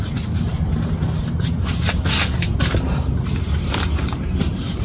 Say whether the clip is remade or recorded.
remade